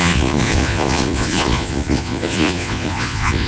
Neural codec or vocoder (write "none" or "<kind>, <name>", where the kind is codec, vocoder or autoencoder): vocoder, Vocos